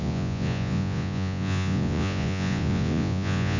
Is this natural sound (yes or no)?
no